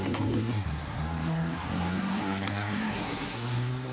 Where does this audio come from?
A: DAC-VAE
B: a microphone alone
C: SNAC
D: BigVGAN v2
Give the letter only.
C